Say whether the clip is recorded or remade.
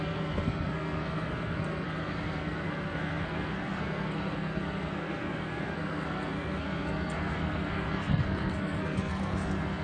remade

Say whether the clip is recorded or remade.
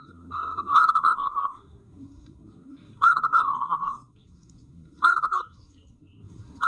remade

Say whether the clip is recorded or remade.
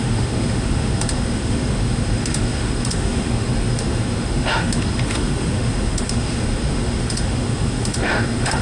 remade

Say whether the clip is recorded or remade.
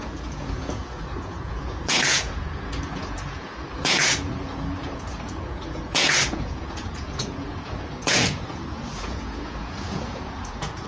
remade